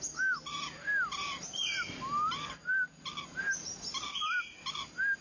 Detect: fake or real real